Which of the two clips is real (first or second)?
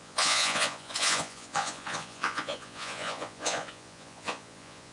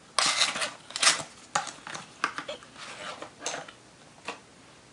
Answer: second